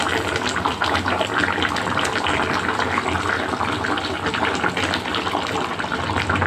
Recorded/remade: recorded